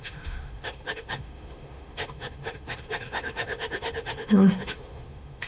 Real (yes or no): no